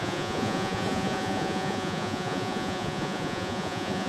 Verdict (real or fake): fake